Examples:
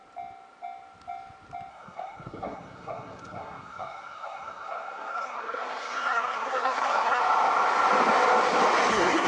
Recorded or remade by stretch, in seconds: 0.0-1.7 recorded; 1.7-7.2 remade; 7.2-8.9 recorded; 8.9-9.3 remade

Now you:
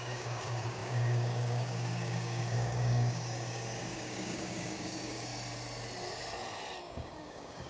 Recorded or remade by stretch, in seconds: 0.0-5.3 remade; 5.3-6.8 recorded; 6.8-7.7 remade

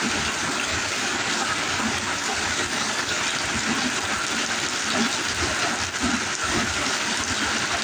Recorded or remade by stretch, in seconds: 0.0-0.4 recorded; 0.4-3.2 remade; 3.2-6.4 recorded; 6.4-7.2 remade; 7.2-7.8 recorded

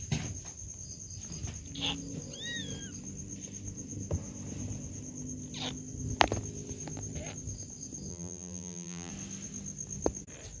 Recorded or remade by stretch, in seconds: 0.0-8.1 recorded; 8.1-9.1 remade; 9.1-10.6 recorded

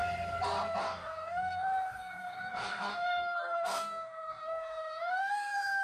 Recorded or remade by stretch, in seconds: 0.0-0.8 recorded; 0.8-5.8 remade

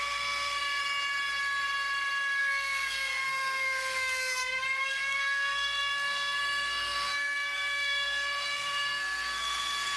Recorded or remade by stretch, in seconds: 0.0-0.8 remade; 0.8-2.4 recorded; 2.4-10.0 remade

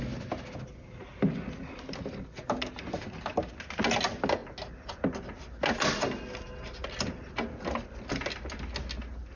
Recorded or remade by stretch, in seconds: 0.0-9.4 recorded